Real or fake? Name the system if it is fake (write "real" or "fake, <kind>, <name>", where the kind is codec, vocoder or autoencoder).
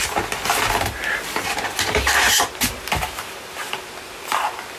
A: real